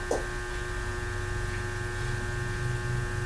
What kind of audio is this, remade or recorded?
recorded